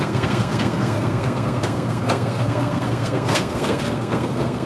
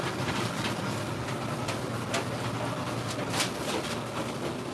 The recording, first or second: second